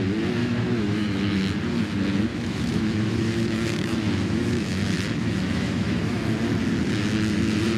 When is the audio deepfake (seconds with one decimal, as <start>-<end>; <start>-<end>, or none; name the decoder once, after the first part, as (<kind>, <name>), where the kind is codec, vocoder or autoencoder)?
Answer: 0.4-1.4 (autoencoder, DAC-VAE); 2.3-6.2